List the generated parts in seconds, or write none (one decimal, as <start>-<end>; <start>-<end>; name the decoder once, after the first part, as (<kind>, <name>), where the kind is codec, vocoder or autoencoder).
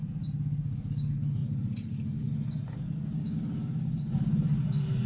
none